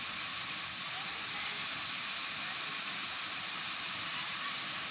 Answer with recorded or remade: recorded